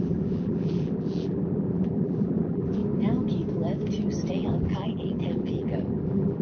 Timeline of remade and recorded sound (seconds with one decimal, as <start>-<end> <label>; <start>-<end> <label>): 0.0-2.8 remade; 2.8-4.3 recorded; 4.3-6.4 remade